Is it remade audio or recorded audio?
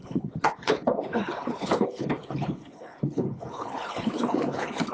remade